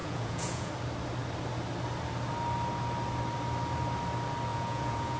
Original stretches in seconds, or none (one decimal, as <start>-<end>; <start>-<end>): 0.7-4.5